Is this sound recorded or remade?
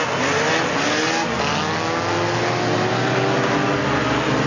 recorded